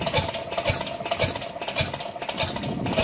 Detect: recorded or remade recorded